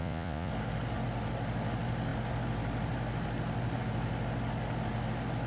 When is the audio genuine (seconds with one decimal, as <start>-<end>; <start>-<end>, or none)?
0.5-5.5